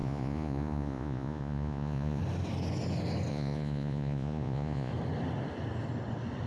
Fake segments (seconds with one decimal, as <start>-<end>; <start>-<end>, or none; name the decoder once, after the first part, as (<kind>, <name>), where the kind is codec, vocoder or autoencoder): 0.0-2.2 (vocoder, Vocos); 3.3-4.9